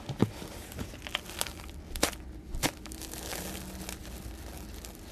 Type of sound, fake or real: real